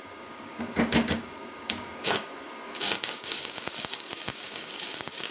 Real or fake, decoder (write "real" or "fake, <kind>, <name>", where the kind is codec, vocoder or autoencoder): fake, codec, DAC